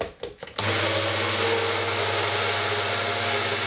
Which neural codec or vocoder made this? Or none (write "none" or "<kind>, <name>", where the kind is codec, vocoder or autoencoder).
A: none